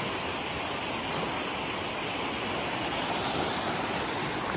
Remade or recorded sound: recorded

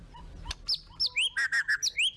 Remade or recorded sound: recorded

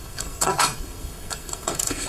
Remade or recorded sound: remade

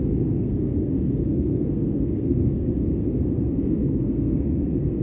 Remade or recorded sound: remade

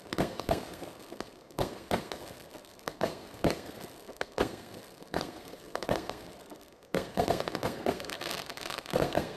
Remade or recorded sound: remade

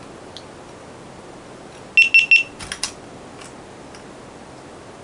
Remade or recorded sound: recorded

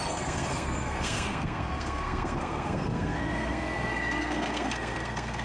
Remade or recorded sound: remade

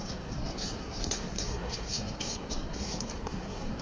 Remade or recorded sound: remade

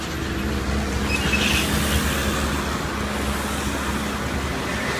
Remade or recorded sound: recorded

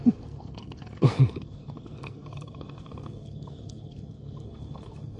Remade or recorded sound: remade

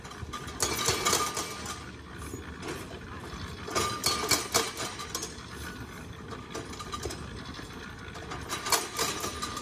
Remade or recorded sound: recorded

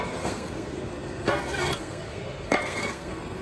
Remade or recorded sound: remade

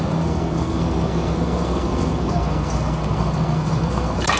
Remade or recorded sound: remade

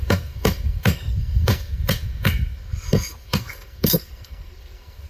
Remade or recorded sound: remade